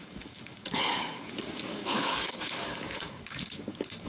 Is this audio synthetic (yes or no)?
yes